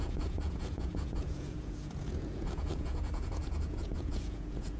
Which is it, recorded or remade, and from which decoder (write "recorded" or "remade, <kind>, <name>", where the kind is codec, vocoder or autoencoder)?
remade, vocoder, Vocos